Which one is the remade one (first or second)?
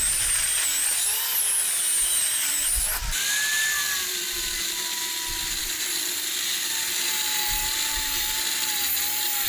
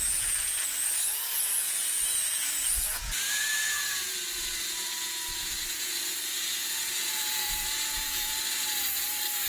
second